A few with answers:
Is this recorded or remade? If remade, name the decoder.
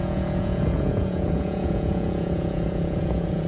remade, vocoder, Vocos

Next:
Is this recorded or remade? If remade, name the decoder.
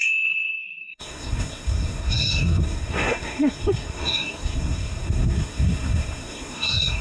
remade, codec, SNAC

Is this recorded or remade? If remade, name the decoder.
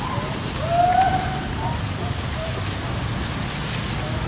recorded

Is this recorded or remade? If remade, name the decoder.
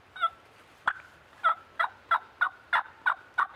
recorded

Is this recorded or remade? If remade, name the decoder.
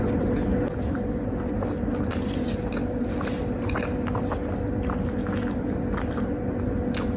recorded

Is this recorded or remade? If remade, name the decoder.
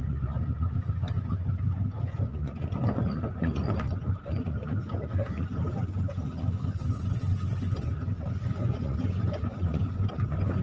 remade, vocoder, Vocos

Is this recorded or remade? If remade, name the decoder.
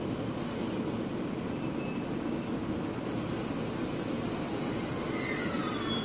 recorded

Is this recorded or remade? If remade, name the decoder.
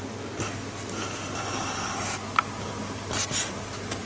recorded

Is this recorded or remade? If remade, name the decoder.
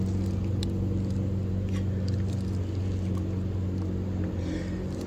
recorded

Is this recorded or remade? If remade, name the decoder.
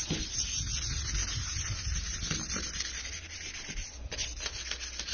recorded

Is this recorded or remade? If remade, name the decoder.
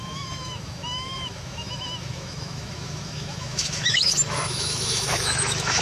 remade, autoencoder, DAC-VAE